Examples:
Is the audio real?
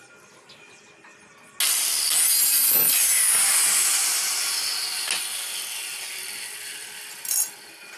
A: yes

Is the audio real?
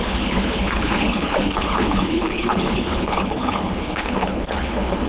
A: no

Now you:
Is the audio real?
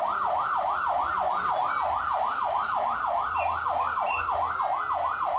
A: yes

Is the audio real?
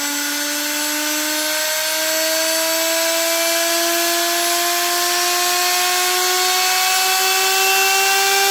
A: yes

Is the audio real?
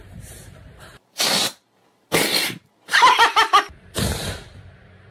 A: no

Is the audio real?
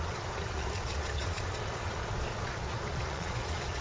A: no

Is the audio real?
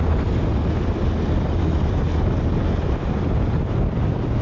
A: yes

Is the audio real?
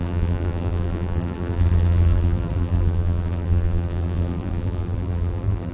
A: no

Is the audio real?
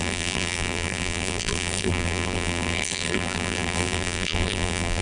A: no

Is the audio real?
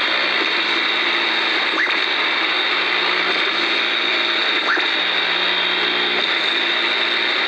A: yes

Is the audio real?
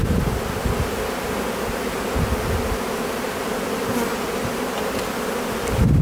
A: yes